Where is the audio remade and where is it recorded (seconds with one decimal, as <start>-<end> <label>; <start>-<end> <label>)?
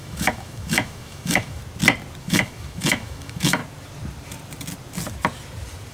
0.0-1.6 remade; 1.6-2.2 recorded; 2.2-3.6 remade; 3.6-5.9 recorded